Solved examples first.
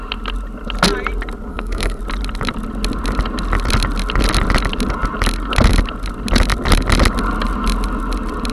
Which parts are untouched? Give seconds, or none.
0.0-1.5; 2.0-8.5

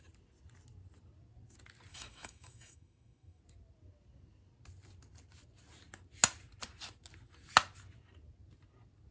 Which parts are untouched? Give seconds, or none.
0.0-1.9; 3.4-9.1

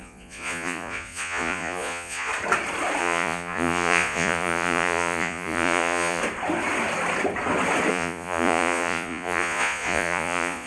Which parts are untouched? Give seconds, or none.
2.3-3.0; 6.2-7.9

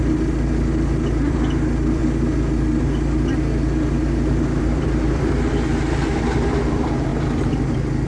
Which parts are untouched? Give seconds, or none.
2.0-4.6